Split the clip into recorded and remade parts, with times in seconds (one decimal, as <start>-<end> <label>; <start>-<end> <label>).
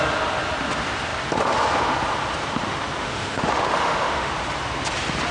0.0-3.0 recorded; 3.0-4.3 remade; 4.3-5.3 recorded